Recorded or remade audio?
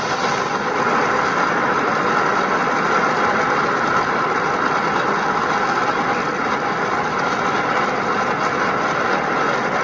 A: remade